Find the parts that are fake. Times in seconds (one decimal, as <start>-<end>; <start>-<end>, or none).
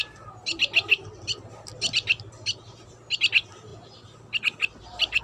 0.5-3.3